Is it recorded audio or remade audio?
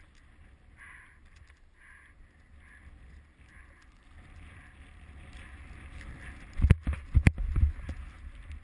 recorded